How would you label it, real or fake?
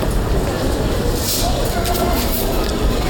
real